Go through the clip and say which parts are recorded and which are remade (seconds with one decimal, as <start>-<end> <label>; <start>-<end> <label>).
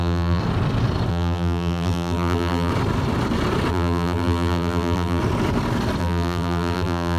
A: 0.0-0.4 remade; 0.4-1.1 recorded; 1.1-2.7 remade; 2.7-3.7 recorded; 3.7-5.2 remade; 5.2-6.0 recorded; 6.0-7.2 remade